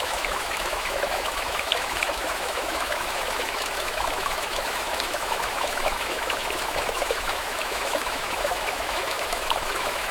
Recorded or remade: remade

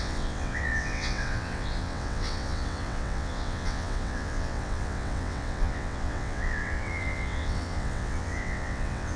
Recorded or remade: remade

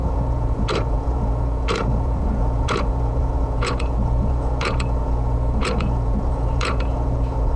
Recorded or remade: remade